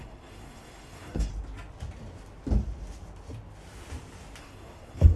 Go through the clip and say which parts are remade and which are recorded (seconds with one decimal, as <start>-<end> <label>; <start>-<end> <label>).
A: 0.0-1.3 remade; 1.3-4.4 recorded; 4.4-5.2 remade